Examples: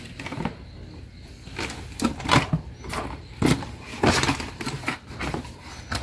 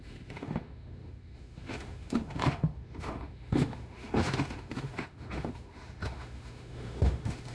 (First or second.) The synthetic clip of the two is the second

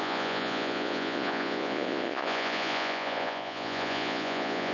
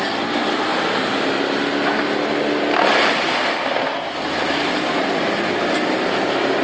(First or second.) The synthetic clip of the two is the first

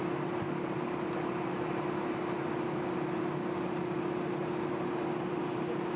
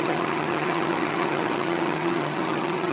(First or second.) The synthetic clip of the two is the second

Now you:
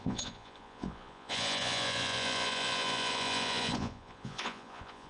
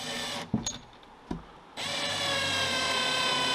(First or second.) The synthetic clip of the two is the first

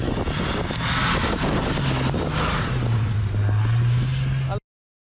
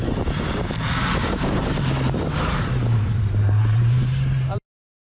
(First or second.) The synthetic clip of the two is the second